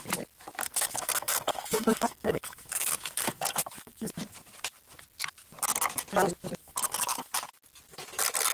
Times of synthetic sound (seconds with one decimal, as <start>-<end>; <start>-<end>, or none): 0.6-4.1; 6.6-7.3